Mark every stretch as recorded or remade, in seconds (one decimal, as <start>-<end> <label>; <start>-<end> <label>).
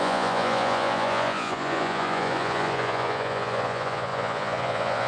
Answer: 0.0-5.1 remade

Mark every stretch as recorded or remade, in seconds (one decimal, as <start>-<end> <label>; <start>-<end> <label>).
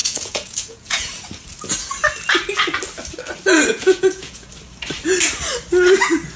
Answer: 0.0-1.1 remade; 1.1-3.7 recorded; 3.7-4.5 remade; 4.5-6.4 recorded